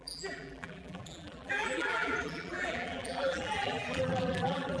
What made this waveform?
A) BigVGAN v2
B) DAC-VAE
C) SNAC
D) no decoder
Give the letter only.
A